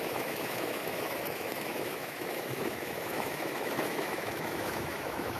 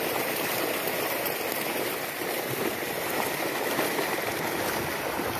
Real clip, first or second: second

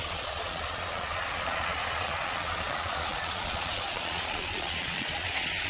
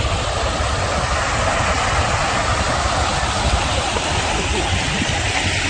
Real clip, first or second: second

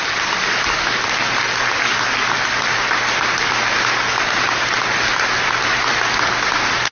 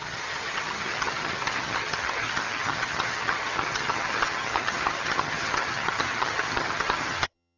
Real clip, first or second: first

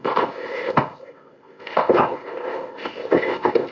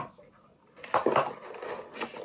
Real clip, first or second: second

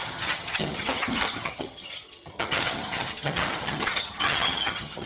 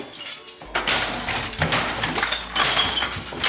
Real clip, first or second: second